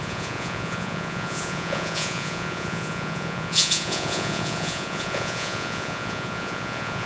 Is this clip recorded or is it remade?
remade